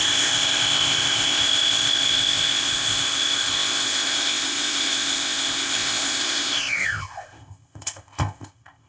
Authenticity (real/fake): fake